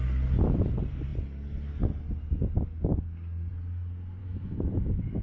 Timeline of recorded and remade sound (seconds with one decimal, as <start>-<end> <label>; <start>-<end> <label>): 0.0-4.2 recorded; 4.2-5.2 remade